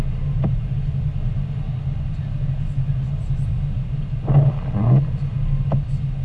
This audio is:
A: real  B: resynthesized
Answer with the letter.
A